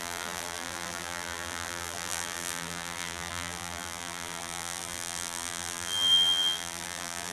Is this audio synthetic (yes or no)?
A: yes